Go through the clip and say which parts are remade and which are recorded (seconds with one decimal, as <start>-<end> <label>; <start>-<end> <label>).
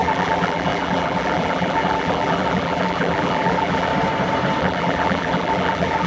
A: 0.0-3.9 remade; 3.9-4.6 recorded; 4.6-6.1 remade